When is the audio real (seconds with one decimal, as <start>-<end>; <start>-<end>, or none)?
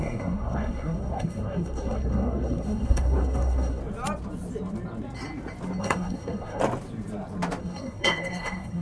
3.8-5.8; 6.6-7.6